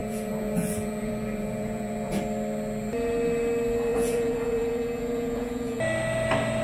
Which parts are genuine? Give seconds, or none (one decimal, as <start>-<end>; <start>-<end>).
2.2-3.9; 5.8-6.6